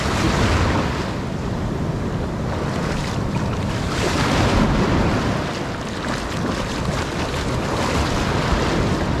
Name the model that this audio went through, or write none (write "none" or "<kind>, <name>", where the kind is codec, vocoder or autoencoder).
none